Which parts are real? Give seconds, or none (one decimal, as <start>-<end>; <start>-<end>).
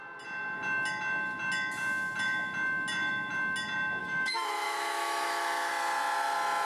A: 0.0-4.0; 5.7-6.7